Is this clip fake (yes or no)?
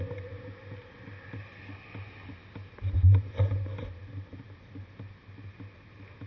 no